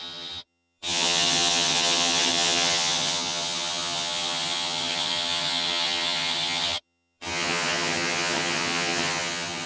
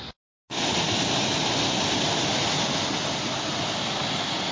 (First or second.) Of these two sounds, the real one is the second